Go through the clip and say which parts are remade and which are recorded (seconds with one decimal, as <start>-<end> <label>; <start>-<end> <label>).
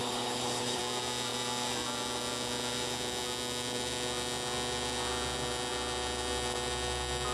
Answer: 0.0-0.8 remade; 0.8-7.3 recorded